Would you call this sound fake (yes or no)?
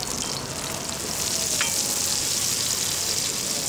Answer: no